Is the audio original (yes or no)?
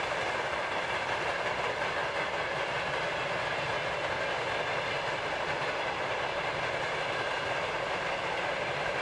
yes